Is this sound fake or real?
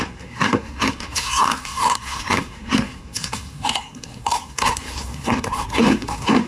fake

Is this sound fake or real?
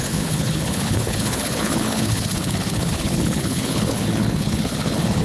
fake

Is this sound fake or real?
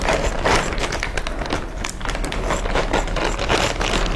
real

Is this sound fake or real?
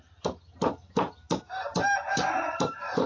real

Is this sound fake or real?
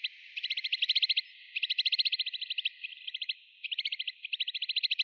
real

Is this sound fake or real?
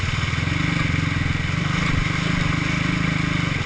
real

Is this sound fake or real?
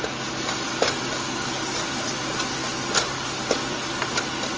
real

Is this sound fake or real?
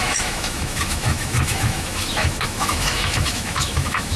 fake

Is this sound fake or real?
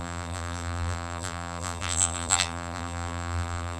fake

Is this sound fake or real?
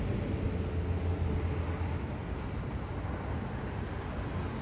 real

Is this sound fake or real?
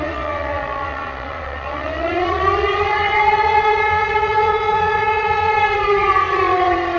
fake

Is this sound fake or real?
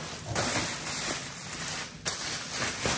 fake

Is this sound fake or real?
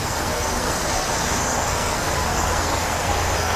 fake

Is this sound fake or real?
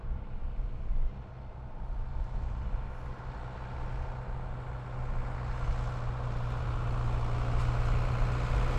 real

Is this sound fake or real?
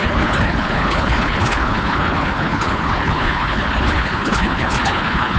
fake